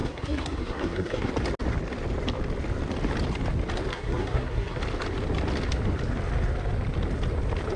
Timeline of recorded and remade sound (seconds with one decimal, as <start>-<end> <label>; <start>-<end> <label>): 0.0-1.3 remade; 1.3-3.9 recorded; 3.9-4.8 remade; 4.8-7.8 recorded